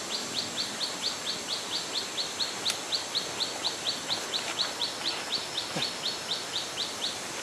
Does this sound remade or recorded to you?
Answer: recorded